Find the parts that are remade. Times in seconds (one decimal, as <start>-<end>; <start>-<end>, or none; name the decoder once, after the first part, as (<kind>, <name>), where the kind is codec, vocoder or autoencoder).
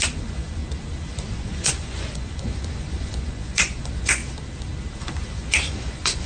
0.0-0.6 (vocoder, Vocos); 1.3-4.2; 5.0-6.3